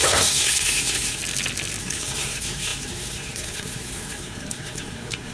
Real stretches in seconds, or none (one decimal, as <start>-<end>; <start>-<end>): 1.2-1.8